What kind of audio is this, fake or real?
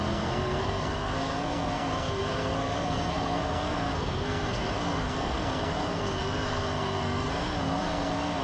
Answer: fake